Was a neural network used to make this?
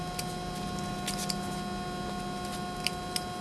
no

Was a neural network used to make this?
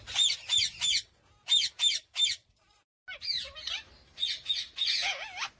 no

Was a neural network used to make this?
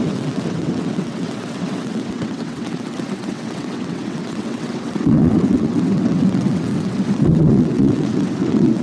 yes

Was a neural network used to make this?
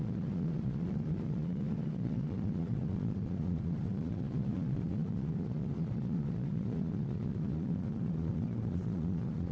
yes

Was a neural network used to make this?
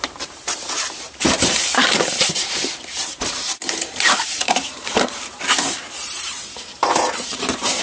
yes